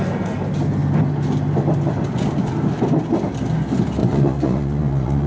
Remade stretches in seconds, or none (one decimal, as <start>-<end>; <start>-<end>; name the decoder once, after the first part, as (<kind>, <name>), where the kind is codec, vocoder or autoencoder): 4.0-5.3 (vocoder, Vocos)